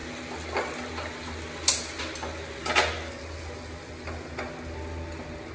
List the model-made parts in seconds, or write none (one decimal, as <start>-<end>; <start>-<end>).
none